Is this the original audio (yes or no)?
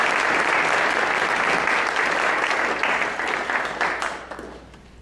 yes